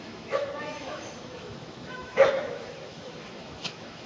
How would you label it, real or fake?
fake